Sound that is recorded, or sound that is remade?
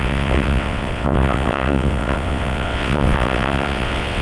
remade